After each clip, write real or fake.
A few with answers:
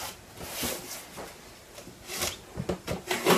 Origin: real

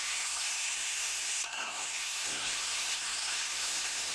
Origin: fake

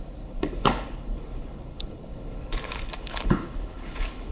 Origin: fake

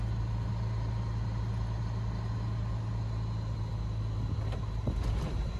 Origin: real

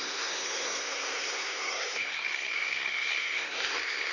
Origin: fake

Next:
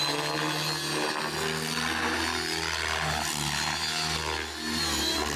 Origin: real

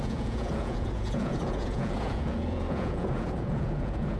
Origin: fake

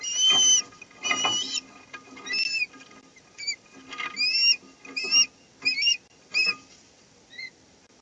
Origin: real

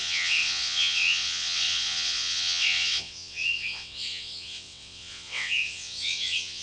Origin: fake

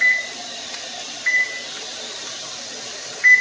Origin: real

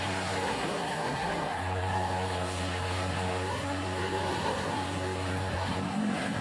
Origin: fake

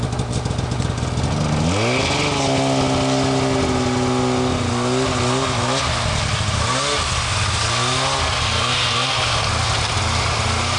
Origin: real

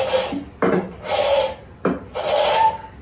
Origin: real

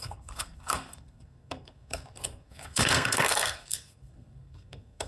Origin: fake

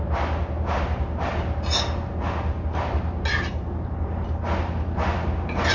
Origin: real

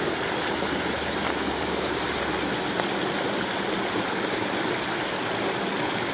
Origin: real